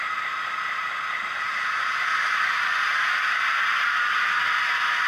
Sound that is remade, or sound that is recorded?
recorded